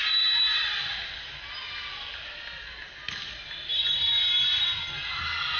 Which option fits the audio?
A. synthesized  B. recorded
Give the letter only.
B